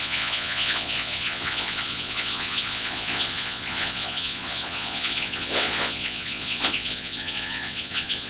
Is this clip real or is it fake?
fake